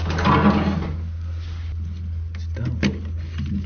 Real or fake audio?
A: real